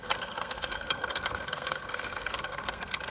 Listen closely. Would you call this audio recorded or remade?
remade